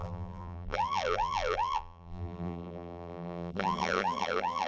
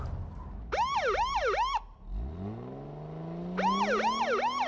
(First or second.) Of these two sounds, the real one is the second